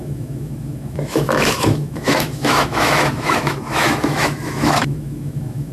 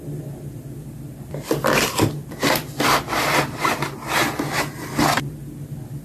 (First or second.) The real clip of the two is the second